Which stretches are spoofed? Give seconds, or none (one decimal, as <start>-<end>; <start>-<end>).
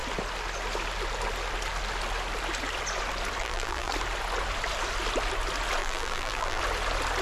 3.4-3.9; 5.8-6.6